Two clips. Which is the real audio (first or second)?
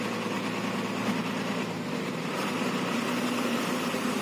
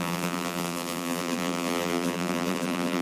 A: first